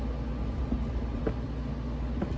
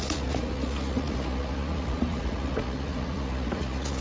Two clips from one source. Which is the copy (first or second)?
second